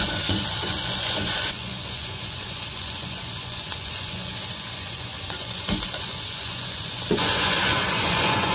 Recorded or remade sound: remade